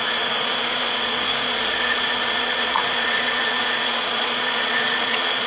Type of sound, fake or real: fake